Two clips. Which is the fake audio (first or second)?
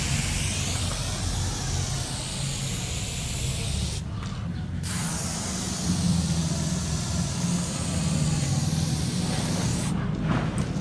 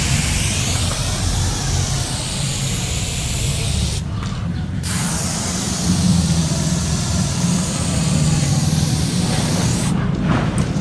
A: second